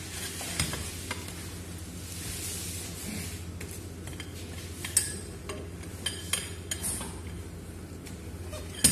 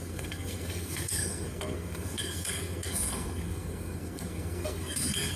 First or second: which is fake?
second